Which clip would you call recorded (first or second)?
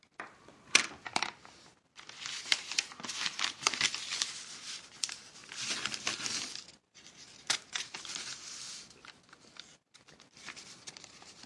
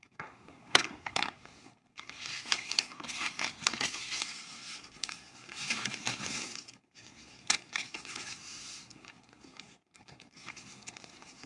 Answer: first